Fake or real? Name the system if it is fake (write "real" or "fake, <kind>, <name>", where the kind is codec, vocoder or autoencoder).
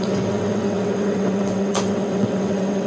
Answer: fake, vocoder, WaveNeXt